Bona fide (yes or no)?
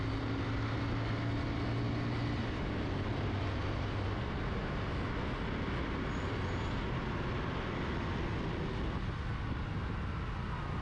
yes